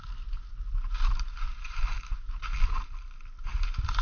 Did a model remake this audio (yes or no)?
no